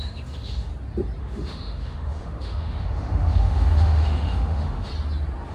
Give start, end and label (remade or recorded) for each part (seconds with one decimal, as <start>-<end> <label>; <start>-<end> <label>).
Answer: 0.0-0.7 remade; 0.7-1.2 recorded; 1.2-4.9 remade; 4.9-5.5 recorded